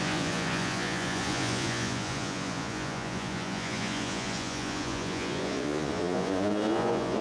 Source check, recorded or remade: remade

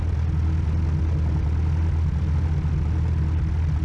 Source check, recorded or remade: recorded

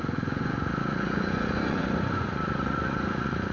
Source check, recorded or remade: remade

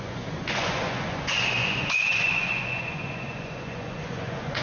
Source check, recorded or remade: remade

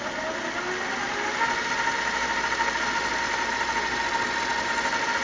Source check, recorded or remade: recorded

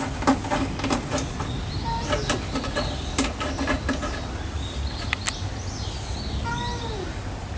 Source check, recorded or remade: recorded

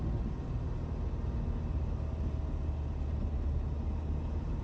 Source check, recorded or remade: recorded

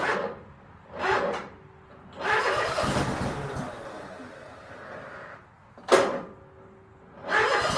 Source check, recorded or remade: recorded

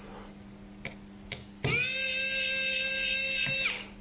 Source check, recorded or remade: recorded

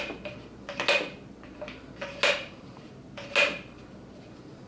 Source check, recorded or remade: recorded